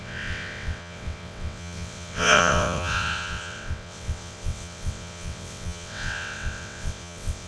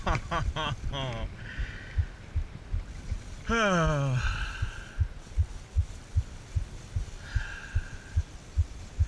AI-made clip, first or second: first